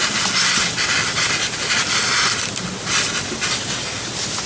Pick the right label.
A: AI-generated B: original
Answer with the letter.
B